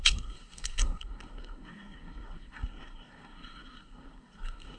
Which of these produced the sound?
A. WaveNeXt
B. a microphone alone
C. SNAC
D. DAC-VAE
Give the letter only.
C